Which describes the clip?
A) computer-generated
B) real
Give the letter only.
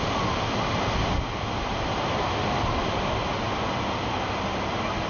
B